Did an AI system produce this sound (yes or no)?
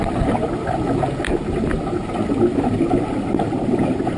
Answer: no